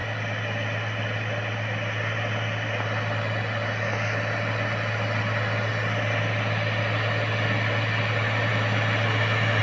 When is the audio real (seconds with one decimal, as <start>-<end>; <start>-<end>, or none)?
0.0-9.6